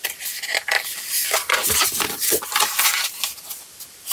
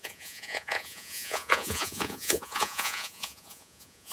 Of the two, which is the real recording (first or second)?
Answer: first